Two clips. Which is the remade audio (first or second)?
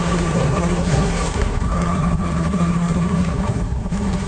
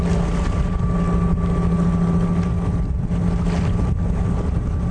first